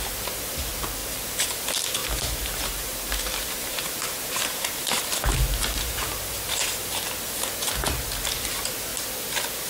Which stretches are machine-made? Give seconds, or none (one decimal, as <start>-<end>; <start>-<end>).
1.0-1.6; 2.0-6.9